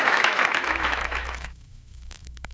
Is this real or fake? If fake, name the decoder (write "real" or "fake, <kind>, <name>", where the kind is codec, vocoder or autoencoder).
fake, autoencoder, DAC-VAE